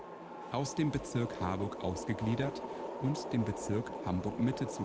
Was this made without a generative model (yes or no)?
no